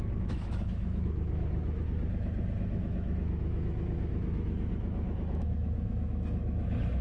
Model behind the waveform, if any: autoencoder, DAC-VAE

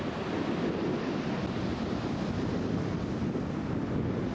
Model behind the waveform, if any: none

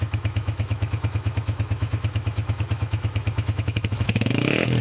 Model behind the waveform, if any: autoencoder, DAC-VAE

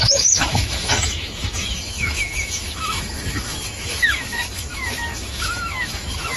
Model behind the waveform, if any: autoencoder, DAC-VAE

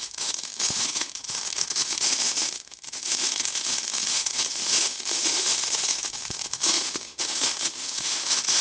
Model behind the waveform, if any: autoencoder, DAC-VAE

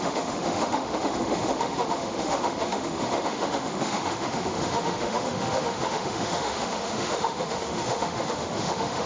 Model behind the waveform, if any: autoencoder, DAC-VAE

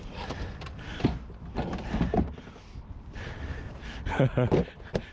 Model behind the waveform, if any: none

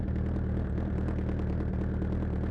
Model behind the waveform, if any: none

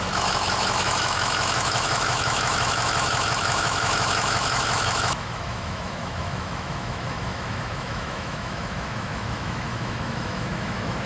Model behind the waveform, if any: autoencoder, DAC-VAE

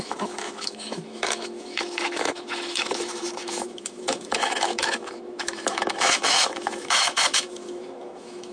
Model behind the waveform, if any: autoencoder, DAC-VAE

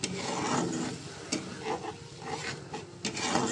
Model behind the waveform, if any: none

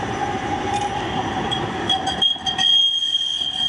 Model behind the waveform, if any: none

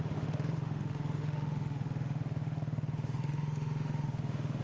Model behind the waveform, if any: autoencoder, DAC-VAE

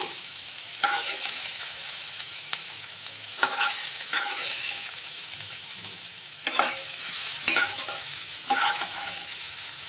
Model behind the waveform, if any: autoencoder, DAC-VAE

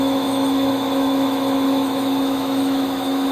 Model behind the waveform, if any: autoencoder, DAC-VAE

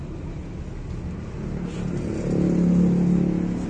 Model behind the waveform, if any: none